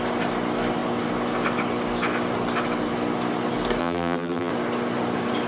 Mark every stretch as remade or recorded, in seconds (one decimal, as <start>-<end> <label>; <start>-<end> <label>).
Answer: 0.0-3.8 recorded; 3.8-4.5 remade; 4.5-5.5 recorded